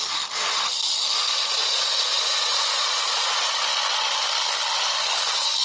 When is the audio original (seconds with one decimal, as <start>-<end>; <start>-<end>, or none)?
0.0-1.6; 3.6-5.6